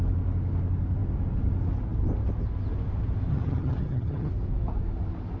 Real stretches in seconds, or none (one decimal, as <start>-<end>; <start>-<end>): 0.0-3.3; 4.3-5.4